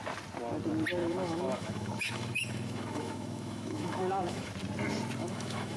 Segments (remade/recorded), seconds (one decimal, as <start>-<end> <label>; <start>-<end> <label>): 0.0-1.0 recorded; 1.0-4.5 remade; 4.5-5.2 recorded; 5.2-5.8 remade